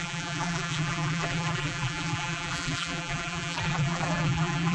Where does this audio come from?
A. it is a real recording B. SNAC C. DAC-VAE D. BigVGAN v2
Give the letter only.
D